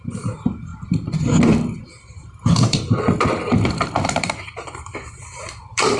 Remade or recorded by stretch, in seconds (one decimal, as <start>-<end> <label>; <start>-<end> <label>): 0.0-2.2 recorded; 2.2-6.0 remade